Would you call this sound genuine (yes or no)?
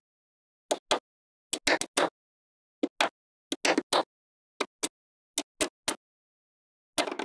yes